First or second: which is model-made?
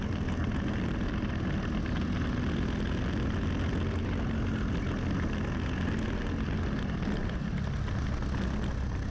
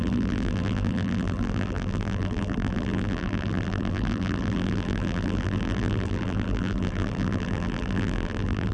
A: second